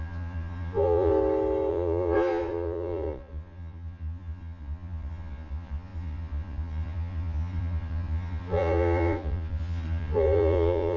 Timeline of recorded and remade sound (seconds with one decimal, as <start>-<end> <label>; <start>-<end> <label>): 0.0-1.1 remade; 1.1-1.7 recorded; 1.7-11.0 remade